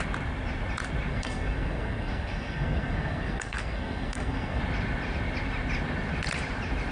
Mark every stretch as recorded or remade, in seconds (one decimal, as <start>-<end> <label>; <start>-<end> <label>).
0.0-1.1 recorded; 1.1-4.6 remade; 4.6-6.9 recorded